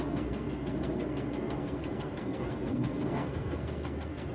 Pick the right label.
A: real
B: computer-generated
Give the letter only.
B